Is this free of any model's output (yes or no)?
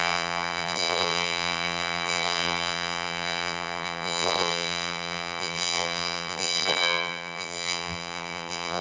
no